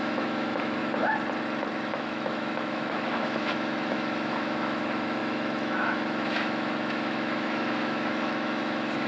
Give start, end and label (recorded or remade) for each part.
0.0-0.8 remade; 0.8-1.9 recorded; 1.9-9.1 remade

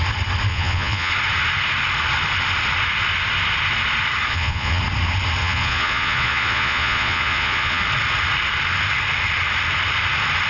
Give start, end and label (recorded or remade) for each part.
0.0-0.5 recorded; 0.5-1.1 remade; 1.1-4.3 recorded; 4.3-4.8 remade; 4.8-5.4 recorded; 5.4-7.8 remade; 7.8-10.5 recorded

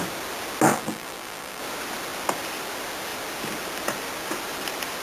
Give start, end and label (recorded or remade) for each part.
0.0-0.7 recorded; 0.7-1.6 remade; 1.6-5.0 recorded

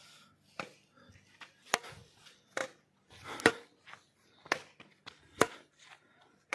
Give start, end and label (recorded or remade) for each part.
0.0-6.5 recorded

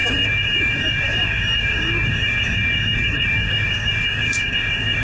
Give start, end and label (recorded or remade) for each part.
0.0-5.0 remade

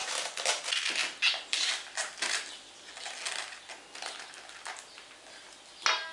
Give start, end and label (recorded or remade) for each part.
0.0-6.1 recorded

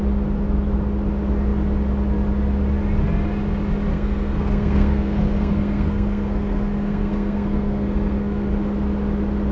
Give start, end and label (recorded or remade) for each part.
0.0-3.9 recorded; 3.9-8.5 remade; 8.5-9.5 recorded

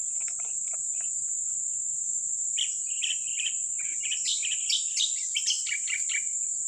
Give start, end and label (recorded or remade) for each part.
0.0-4.3 recorded; 4.3-4.8 remade; 4.8-6.7 recorded